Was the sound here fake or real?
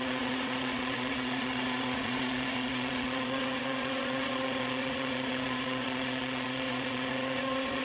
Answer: fake